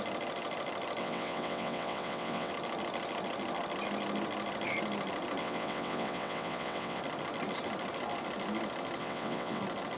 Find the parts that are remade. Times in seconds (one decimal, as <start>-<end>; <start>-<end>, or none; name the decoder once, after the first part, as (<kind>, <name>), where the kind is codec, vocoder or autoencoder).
1.0-2.5 (vocoder, WaveNeXt); 5.4-7.0; 9.0-9.6